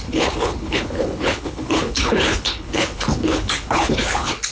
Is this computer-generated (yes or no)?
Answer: yes